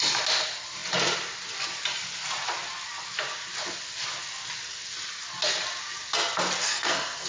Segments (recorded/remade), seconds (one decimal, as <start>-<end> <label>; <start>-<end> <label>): 0.0-6.6 recorded; 6.6-7.3 remade